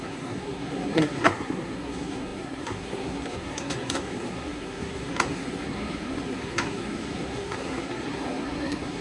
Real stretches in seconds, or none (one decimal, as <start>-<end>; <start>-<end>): none